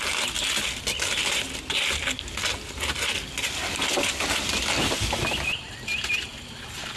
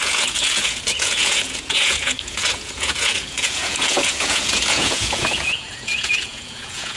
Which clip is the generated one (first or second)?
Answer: second